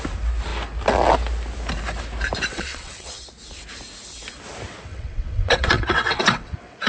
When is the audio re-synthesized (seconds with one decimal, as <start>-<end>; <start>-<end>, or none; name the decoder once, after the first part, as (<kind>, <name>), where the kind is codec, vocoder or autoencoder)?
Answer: 2.5-3.3 (vocoder, WaveNeXt); 4.9-6.9